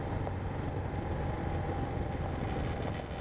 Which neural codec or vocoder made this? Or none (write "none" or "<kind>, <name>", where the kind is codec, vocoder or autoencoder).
none